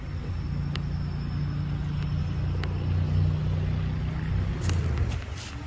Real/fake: real